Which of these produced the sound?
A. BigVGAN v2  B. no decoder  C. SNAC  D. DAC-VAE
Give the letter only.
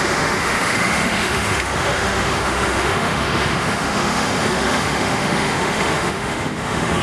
D